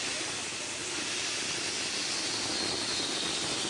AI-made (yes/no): no